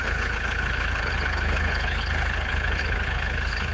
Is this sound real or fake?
fake